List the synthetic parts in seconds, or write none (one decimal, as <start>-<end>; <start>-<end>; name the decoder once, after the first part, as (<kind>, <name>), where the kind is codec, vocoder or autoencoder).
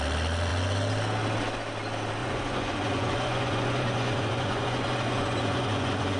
2.2-6.2 (vocoder, Vocos)